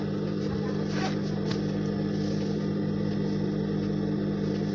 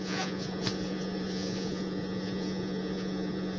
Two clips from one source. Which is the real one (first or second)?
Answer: first